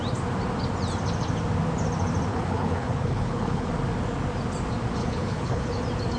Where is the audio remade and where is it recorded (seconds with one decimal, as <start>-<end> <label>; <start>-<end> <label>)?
0.0-2.3 recorded; 2.3-3.7 remade; 3.7-5.0 recorded; 5.0-5.8 remade; 5.8-6.2 recorded

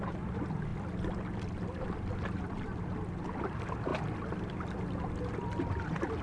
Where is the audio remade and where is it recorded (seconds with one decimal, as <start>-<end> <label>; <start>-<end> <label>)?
0.0-6.2 recorded

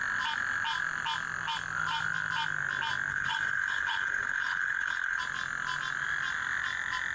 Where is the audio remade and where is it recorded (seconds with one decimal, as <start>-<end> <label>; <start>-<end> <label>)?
0.0-3.1 recorded; 3.1-5.2 remade; 5.2-7.1 recorded

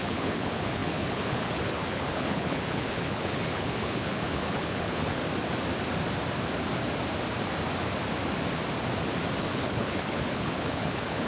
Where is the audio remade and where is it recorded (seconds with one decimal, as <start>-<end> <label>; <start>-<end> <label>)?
0.0-5.2 remade; 5.2-9.4 recorded; 9.4-11.3 remade

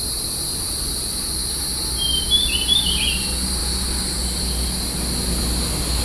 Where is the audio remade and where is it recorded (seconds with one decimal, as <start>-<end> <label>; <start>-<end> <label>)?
0.0-6.0 recorded